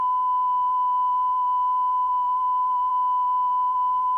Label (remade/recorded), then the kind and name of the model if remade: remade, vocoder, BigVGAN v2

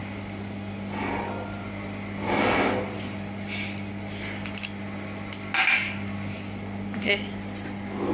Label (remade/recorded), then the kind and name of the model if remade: recorded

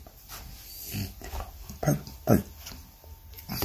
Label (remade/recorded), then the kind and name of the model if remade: recorded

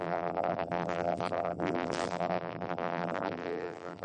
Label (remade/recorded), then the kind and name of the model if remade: remade, vocoder, BigVGAN v2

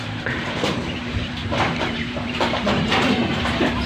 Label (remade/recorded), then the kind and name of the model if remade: remade, vocoder, BigVGAN v2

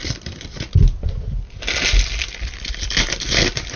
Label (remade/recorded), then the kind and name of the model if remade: remade, vocoder, BigVGAN v2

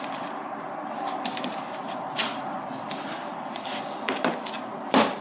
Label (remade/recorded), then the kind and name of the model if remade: remade, vocoder, BigVGAN v2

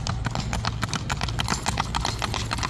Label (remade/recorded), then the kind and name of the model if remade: recorded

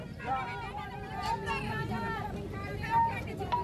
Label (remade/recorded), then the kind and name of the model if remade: recorded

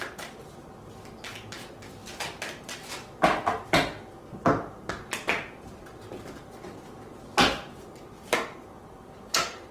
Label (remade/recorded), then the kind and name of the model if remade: recorded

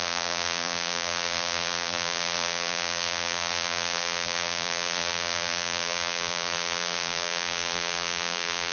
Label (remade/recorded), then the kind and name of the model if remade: remade, vocoder, BigVGAN v2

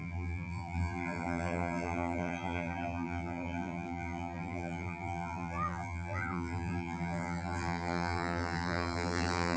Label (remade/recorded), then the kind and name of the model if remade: remade, vocoder, BigVGAN v2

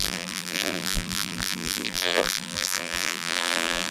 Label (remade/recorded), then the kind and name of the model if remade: remade, vocoder, BigVGAN v2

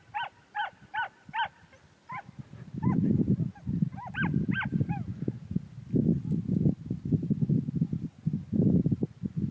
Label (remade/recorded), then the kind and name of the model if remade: recorded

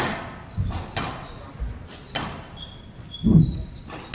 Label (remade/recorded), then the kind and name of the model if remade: recorded